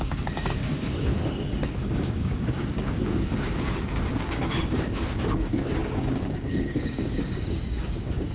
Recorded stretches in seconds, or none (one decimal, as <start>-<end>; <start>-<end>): none